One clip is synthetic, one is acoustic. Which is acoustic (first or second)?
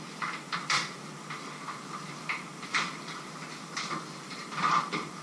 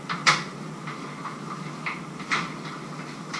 second